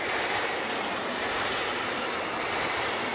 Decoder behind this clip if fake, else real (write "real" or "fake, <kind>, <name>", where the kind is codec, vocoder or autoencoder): fake, vocoder, BigVGAN v2